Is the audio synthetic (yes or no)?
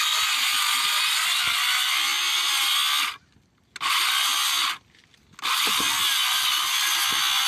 no